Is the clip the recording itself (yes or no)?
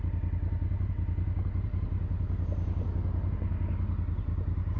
yes